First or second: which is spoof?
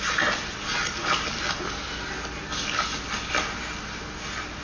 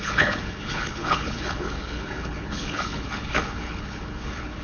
second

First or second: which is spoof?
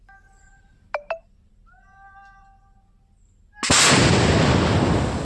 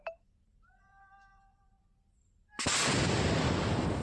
second